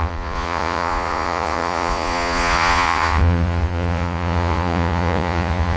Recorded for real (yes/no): no